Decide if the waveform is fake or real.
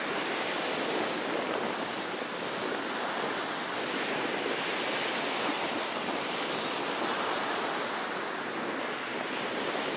real